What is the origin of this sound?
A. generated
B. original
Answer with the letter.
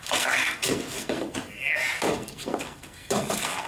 A